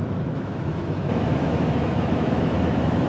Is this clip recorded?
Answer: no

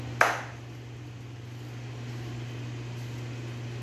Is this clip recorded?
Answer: yes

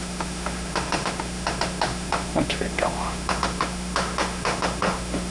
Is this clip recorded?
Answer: no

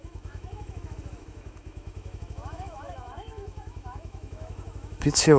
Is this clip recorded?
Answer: no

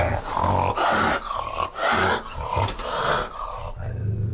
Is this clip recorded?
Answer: yes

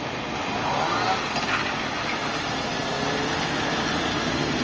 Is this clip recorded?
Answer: yes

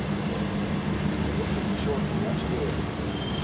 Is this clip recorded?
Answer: yes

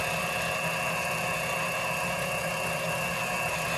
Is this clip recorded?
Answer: yes